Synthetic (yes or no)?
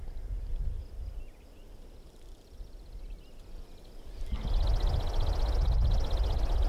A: no